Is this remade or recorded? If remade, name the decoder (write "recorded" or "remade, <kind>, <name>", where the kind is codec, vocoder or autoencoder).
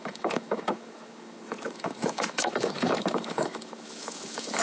remade, autoencoder, DAC-VAE